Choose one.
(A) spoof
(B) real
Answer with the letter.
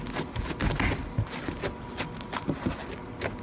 B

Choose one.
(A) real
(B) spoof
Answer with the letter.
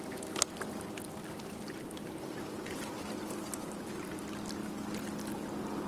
A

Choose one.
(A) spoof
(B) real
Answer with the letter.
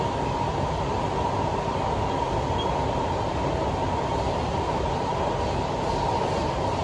B